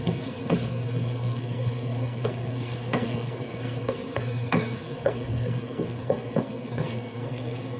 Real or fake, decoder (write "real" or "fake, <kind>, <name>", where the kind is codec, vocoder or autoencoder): fake, codec, SNAC